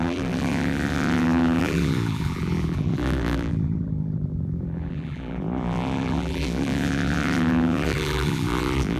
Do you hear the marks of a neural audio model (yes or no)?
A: yes